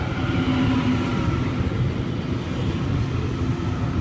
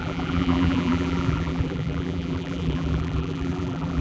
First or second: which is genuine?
first